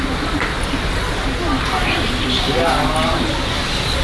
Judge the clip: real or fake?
real